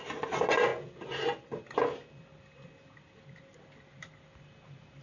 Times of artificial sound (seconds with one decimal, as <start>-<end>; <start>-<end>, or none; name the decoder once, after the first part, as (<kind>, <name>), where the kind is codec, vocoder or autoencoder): none